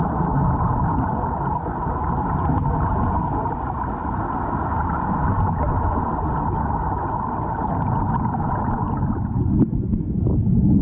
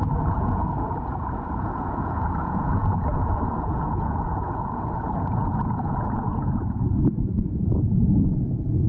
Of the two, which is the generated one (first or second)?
second